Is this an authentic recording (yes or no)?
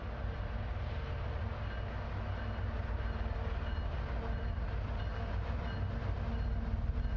yes